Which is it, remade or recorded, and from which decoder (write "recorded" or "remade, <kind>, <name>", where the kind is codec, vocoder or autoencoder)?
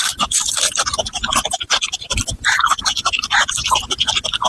recorded